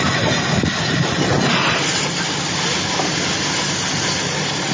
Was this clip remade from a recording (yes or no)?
no